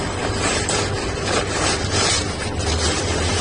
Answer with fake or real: real